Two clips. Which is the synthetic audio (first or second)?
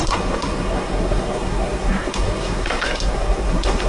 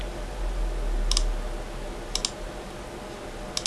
first